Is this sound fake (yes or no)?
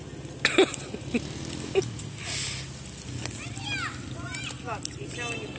no